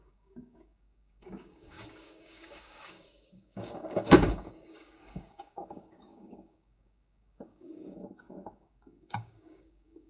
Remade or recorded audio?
remade